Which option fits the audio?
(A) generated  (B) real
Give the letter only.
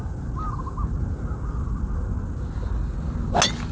B